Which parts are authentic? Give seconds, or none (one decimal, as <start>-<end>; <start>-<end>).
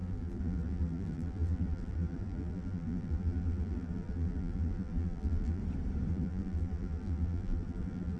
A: 5.6-6.1